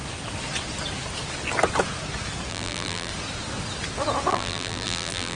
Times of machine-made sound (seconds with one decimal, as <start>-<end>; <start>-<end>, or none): 2.5-3.1; 4.3-5.4